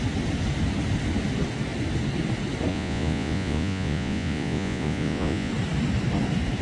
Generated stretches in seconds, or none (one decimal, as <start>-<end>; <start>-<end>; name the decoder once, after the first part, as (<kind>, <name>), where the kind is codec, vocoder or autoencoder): 2.7-5.5 (vocoder, Vocos)